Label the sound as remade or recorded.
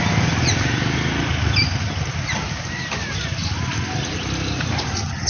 recorded